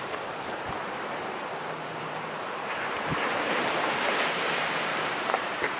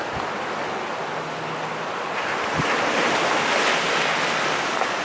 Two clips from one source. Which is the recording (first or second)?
second